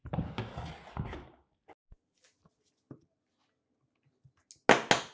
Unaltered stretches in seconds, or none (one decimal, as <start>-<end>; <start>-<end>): 0.0-5.1